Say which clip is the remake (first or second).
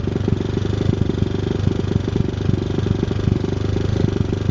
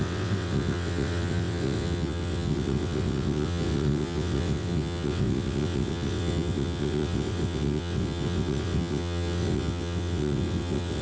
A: second